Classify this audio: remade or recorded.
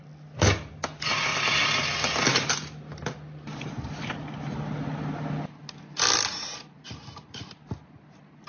recorded